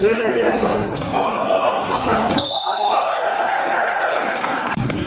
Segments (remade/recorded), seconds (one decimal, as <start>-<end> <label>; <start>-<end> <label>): 0.0-5.1 remade